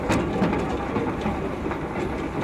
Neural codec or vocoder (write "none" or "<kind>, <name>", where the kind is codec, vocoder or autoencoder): none